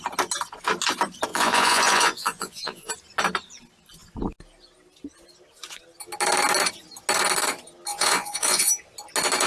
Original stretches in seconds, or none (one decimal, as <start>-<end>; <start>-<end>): 0.0-1.3; 2.9-7.9; 8.7-9.5